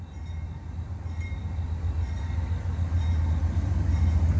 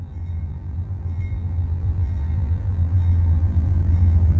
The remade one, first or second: second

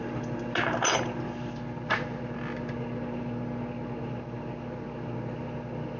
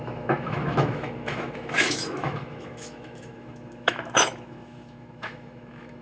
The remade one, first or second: second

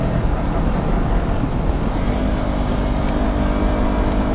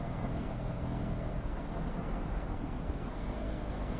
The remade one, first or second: second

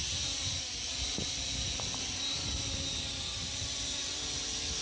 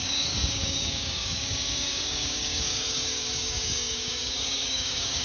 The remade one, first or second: second